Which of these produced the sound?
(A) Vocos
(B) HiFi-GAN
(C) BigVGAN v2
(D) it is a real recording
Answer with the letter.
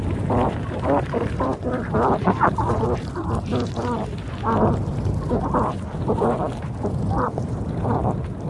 D